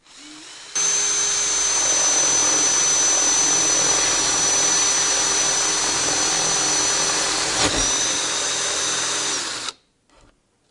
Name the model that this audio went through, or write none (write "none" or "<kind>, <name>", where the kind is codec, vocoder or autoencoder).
none